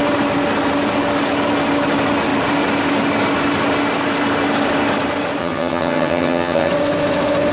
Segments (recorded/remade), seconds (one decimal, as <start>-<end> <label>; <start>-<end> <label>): 0.0-5.4 recorded; 5.4-6.7 remade; 6.7-7.5 recorded